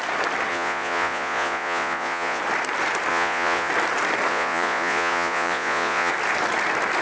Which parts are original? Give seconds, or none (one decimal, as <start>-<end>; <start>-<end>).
0.0-0.5; 2.4-3.1; 3.7-4.3; 6.1-7.0